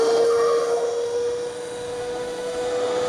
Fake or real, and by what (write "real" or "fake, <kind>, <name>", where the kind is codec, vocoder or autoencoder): fake, autoencoder, DAC-VAE